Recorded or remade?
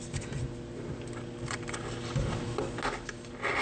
recorded